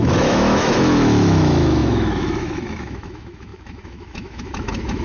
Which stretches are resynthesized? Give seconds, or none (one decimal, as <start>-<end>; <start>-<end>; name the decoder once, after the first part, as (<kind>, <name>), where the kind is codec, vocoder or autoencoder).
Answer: 0.0-5.0 (autoencoder, DAC-VAE)